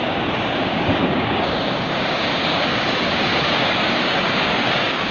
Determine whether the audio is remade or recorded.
remade